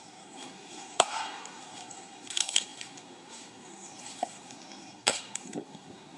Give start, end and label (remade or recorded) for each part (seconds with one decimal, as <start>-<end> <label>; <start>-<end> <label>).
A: 0.0-6.2 remade